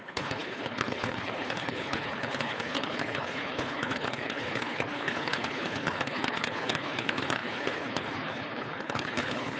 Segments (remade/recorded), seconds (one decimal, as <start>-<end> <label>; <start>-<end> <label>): 0.0-9.6 remade